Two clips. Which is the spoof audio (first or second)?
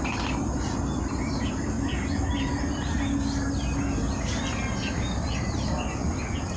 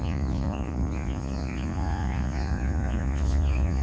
second